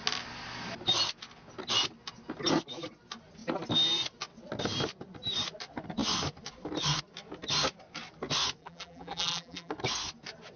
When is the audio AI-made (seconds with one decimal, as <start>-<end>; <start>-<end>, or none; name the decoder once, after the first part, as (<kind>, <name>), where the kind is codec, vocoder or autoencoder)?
8.6-9.7 (vocoder, BigVGAN v2)